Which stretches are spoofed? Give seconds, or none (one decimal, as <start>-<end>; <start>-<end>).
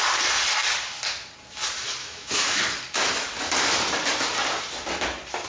2.0-2.6